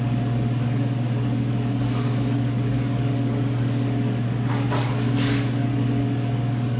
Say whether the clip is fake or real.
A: fake